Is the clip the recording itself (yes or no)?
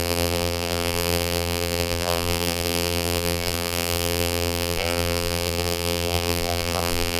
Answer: no